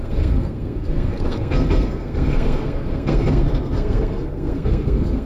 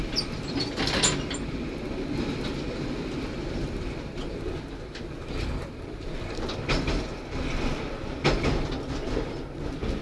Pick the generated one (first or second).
first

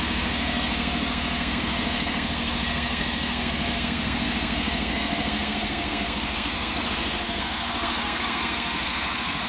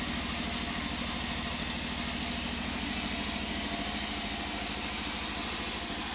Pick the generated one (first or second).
first